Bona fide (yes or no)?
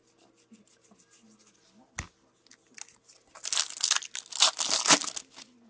yes